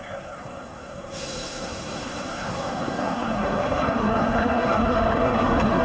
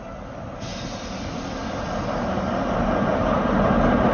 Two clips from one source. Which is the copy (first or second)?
first